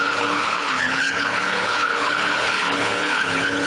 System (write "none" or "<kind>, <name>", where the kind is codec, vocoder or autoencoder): codec, HILCodec